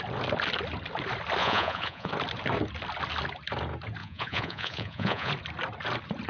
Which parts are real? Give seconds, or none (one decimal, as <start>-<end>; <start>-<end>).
0.0-1.4; 2.1-4.0; 5.3-6.3